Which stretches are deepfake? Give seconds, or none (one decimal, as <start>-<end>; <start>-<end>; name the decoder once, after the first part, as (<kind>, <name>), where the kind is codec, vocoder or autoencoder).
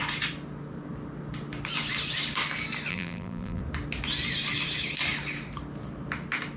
2.9-3.6 (vocoder, BigVGAN v2)